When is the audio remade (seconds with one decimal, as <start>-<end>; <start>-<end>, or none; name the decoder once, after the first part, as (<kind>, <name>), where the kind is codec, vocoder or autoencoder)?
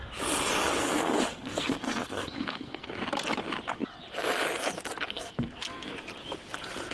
0.8-3.0 (codec, SNAC); 5.1-5.9